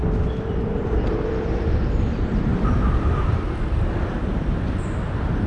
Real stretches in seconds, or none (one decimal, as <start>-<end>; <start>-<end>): 0.0-1.3